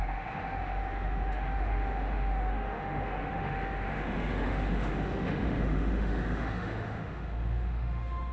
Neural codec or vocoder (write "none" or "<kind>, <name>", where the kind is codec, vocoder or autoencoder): autoencoder, DAC-VAE